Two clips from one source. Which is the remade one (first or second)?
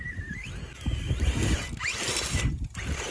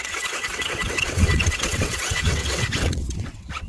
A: second